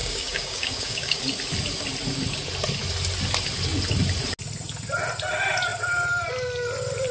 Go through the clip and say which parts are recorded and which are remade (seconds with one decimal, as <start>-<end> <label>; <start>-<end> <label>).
0.0-1.2 remade; 1.2-7.1 recorded